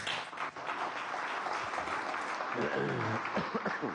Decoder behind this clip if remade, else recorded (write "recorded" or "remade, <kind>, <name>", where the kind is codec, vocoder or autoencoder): recorded